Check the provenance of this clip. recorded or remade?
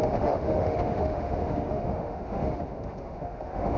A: remade